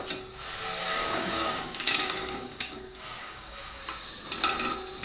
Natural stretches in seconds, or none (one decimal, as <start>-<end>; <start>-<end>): 0.0-0.8; 3.8-5.0